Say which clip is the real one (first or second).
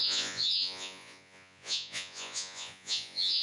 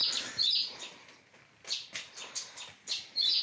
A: second